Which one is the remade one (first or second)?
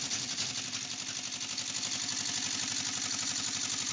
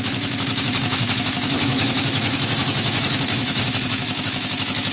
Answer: second